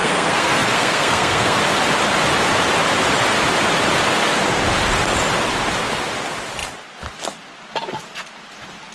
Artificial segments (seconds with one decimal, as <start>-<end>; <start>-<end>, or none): 0.0-1.6